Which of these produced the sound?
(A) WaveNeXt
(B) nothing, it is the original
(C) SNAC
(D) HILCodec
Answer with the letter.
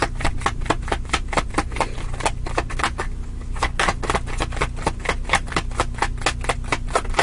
B